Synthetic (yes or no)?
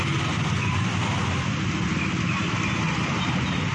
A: no